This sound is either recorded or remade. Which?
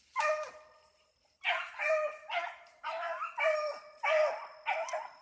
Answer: recorded